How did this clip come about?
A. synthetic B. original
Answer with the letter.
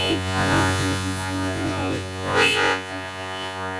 A